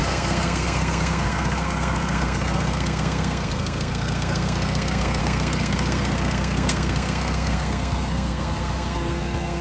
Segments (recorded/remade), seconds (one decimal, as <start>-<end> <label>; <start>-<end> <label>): 0.0-9.6 remade